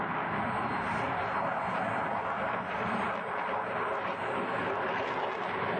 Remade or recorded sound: recorded